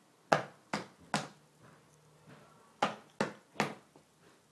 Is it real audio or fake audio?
real